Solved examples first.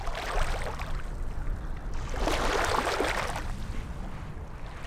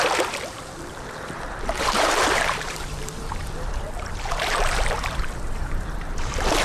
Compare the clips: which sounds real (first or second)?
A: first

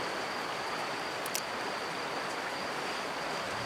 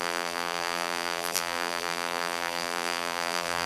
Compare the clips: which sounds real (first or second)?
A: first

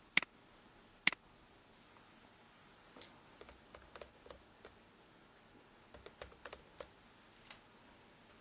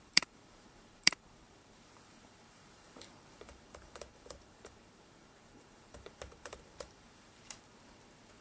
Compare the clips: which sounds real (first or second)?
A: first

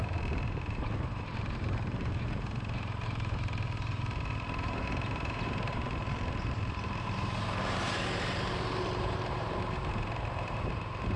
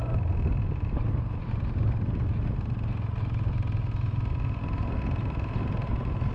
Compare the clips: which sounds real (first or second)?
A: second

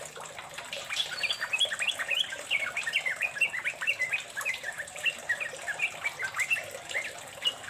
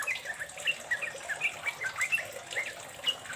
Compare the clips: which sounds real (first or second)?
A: second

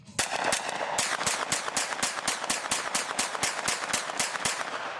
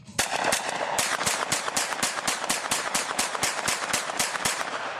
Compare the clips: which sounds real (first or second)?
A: first